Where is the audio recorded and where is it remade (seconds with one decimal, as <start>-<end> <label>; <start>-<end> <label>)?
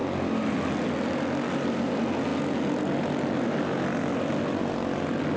0.0-5.4 recorded